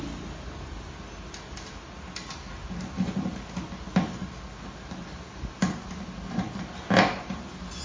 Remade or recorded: recorded